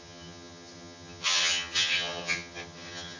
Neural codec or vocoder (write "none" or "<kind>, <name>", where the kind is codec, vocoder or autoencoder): vocoder, HiFi-GAN